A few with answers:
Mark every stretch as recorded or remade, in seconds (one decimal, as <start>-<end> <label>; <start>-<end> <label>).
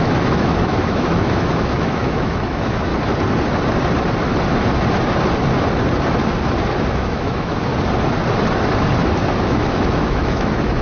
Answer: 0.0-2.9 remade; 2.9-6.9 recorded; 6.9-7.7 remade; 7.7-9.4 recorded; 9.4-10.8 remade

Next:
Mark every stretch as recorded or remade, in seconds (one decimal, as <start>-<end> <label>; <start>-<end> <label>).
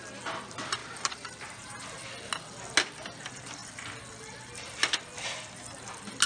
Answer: 0.0-0.8 recorded; 0.8-2.0 remade; 2.0-6.3 recorded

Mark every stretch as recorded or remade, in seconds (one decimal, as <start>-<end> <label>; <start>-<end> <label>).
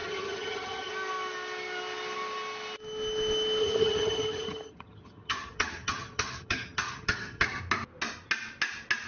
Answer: 0.0-0.9 remade; 0.9-3.6 recorded; 3.6-7.6 remade; 7.6-9.1 recorded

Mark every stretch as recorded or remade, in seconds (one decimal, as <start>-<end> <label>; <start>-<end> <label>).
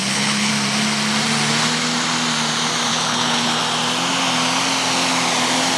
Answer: 0.0-0.5 remade; 0.5-2.9 recorded; 2.9-3.6 remade; 3.6-5.8 recorded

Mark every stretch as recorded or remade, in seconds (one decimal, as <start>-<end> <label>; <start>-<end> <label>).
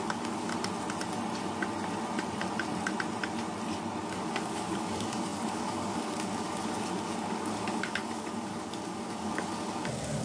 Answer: 0.0-0.5 remade; 0.5-4.0 recorded; 4.0-10.2 remade